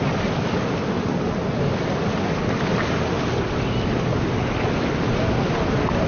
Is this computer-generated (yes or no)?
no